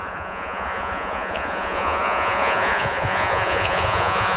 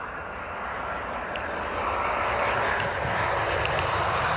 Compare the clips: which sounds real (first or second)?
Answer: second